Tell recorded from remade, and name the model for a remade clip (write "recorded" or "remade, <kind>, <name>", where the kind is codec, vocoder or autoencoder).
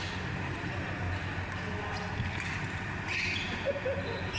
recorded